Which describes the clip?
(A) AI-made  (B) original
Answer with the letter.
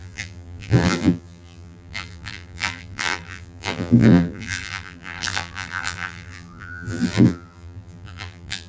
A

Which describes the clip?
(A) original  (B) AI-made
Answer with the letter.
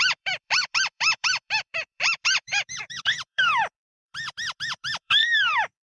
B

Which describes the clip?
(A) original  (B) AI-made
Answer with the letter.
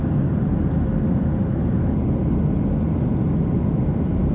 A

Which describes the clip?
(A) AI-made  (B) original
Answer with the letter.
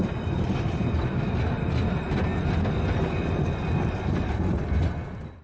A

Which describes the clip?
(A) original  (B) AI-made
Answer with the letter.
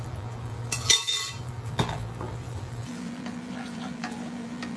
B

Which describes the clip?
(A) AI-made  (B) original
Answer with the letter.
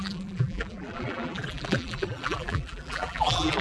A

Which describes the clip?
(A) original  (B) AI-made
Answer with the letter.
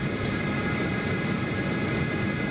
B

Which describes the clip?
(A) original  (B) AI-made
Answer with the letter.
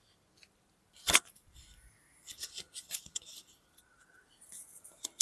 B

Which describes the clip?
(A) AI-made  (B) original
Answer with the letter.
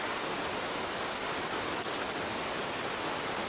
B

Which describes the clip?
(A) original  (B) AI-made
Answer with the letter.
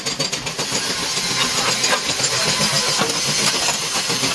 A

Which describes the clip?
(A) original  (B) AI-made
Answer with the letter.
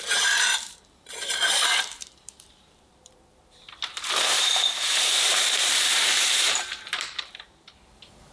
B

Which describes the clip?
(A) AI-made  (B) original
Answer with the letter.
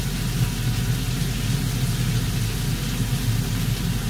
B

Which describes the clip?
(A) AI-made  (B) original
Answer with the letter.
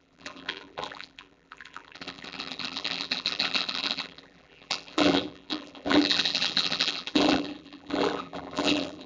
A